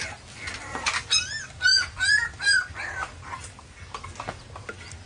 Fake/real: real